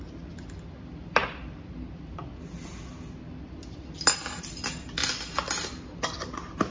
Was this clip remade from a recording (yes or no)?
no